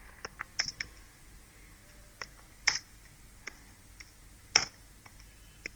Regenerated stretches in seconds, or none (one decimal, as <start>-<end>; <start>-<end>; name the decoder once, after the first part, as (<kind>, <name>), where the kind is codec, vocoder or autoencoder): none